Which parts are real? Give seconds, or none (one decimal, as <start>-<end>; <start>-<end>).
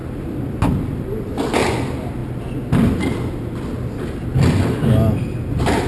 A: 0.0-5.9